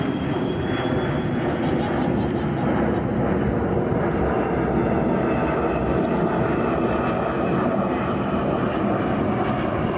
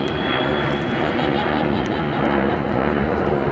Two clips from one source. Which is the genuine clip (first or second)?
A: first